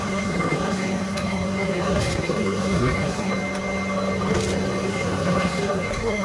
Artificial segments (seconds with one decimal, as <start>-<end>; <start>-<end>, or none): 0.0-3.3; 4.9-6.2

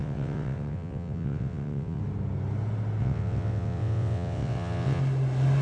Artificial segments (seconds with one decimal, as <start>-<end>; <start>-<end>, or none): 0.0-2.0; 3.0-5.0

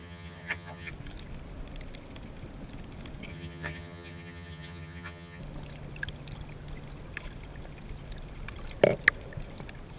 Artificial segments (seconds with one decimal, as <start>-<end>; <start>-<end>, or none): 0.0-0.9; 3.3-5.4

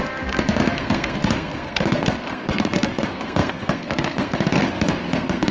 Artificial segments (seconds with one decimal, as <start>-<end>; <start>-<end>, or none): 0.0-5.5

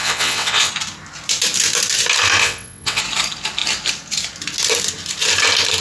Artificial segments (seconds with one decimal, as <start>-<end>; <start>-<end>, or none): 0.0-0.7; 2.4-3.0